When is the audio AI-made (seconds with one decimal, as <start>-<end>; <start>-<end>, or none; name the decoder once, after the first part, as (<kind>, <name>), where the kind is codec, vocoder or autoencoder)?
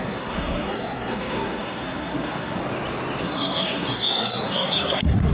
0.0-2.6 (codec, SNAC); 3.2-5.3